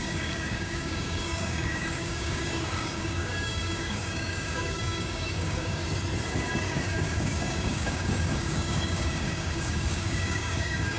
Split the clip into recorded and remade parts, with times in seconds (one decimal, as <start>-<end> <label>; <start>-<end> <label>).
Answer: 0.0-5.8 remade; 5.8-6.5 recorded; 6.5-11.0 remade